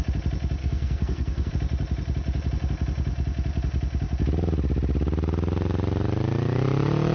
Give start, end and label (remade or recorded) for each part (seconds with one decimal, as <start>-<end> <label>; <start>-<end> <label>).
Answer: 0.0-0.6 recorded; 0.6-1.5 remade; 1.5-7.1 recorded